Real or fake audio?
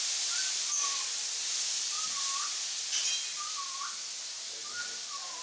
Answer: real